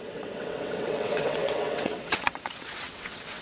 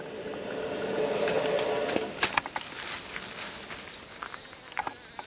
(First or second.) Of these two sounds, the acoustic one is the second